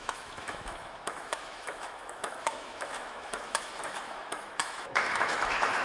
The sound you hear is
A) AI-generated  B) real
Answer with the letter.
A